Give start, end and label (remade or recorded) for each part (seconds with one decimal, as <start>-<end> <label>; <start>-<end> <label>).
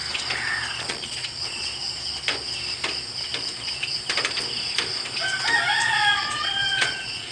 0.0-0.8 recorded; 0.8-1.7 remade; 1.7-6.1 recorded; 6.1-7.3 remade